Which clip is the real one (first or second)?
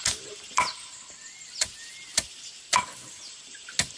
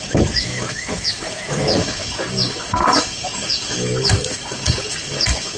first